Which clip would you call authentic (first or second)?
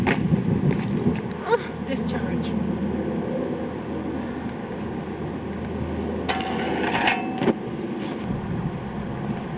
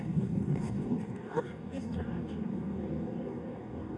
first